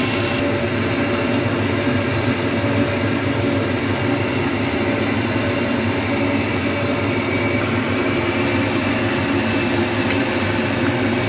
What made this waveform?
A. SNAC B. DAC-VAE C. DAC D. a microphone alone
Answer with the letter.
D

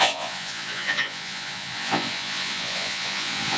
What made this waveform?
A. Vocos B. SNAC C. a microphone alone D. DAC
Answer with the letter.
A